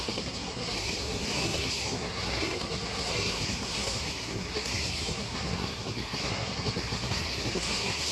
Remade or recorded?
remade